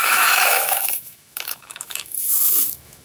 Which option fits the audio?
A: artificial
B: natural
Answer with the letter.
A